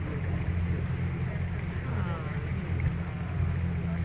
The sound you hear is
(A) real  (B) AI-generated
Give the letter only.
A